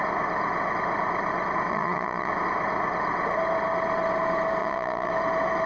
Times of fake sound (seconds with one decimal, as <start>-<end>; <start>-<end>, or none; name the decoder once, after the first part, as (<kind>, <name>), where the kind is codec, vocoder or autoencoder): 1.7-2.3 (vocoder, Vocos); 4.6-5.1